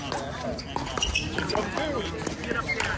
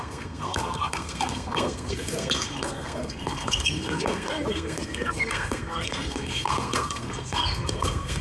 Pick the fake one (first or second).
second